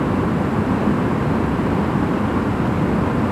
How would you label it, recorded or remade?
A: recorded